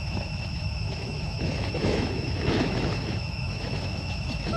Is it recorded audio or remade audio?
remade